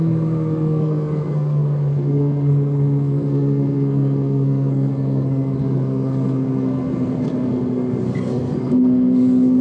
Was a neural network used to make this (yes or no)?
yes